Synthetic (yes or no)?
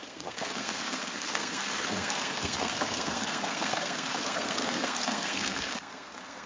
yes